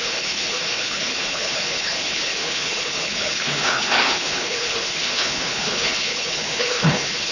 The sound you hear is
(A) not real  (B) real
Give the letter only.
A